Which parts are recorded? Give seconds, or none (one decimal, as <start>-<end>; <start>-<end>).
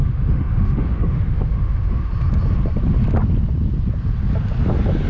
2.1-5.1